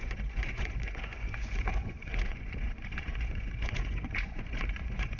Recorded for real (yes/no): no